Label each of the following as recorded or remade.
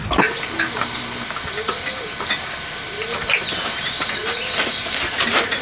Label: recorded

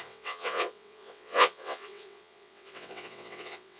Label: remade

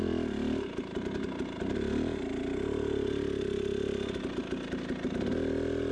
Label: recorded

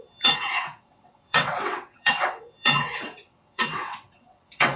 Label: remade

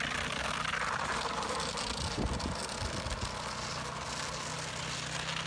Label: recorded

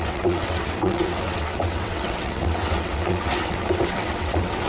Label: remade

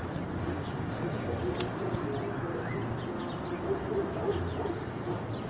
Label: recorded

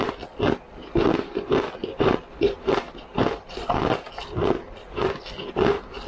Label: recorded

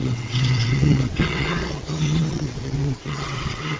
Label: remade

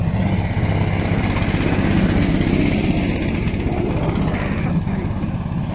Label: recorded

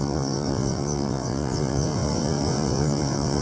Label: remade